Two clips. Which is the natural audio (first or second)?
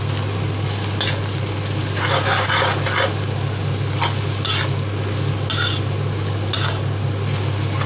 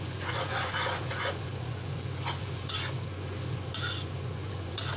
first